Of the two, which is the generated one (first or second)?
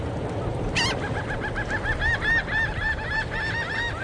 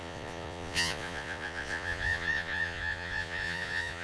second